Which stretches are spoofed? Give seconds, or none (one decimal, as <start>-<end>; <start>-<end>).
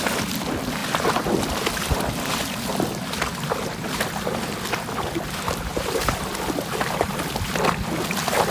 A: 5.7-6.3